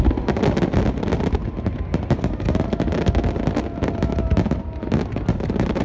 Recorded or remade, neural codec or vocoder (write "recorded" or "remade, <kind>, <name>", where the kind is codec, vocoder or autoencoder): recorded